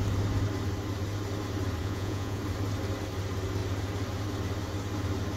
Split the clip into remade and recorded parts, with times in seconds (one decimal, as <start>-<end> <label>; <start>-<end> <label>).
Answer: 0.0-1.8 recorded; 1.8-2.4 remade; 2.4-5.4 recorded